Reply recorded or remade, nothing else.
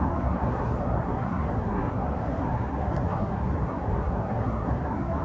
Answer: remade